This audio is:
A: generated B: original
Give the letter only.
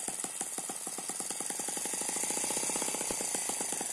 B